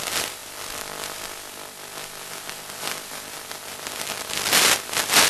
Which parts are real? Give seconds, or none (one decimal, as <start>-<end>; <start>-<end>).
0.0-5.3